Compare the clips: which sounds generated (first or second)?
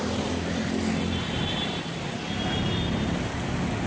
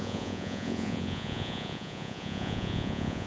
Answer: second